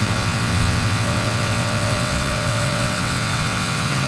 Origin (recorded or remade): remade